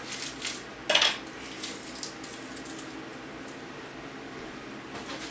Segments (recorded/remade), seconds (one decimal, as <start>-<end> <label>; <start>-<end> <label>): 0.0-5.3 recorded